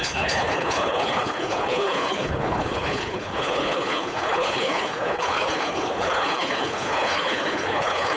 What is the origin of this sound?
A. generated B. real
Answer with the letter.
A